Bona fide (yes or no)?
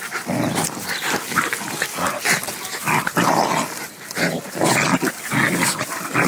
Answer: yes